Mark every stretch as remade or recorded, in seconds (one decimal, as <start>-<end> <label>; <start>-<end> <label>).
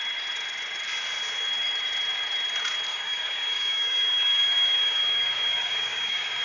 0.0-2.9 recorded; 2.9-6.4 remade